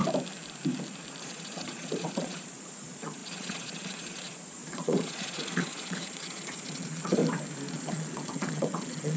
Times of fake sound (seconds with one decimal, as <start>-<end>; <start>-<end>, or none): 1.2-7.2; 7.7-9.2